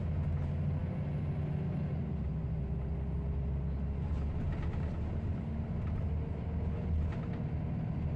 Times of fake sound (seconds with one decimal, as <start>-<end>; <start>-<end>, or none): none